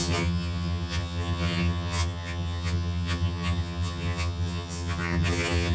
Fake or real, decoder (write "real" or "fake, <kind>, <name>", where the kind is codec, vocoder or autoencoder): fake, vocoder, HiFi-GAN